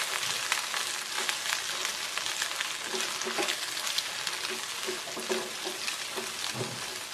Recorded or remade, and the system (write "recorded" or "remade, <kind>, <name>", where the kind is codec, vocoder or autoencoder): recorded